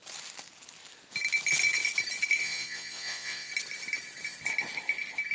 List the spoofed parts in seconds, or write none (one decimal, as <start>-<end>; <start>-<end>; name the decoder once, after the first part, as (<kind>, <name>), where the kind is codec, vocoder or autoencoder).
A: 2.4-3.5 (vocoder, Vocos)